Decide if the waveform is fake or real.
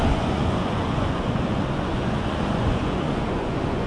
fake